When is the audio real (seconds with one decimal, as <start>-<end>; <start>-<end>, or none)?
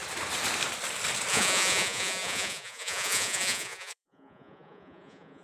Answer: 0.0-1.3